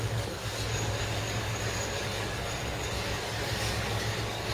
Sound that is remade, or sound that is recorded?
remade